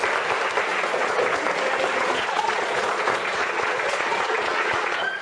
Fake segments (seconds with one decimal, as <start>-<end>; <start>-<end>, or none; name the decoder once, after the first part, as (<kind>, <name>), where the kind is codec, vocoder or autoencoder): 0.7-1.2 (vocoder, Vocos); 2.0-5.2